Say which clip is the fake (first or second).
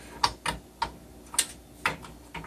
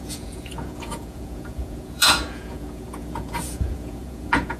second